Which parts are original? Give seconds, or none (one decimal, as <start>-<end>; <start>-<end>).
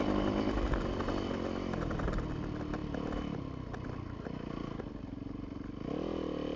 0.0-6.6